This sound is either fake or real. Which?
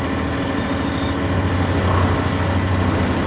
real